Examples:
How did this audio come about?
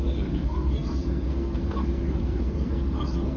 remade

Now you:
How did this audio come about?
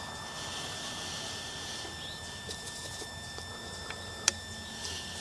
remade